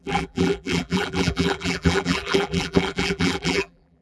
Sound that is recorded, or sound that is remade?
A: remade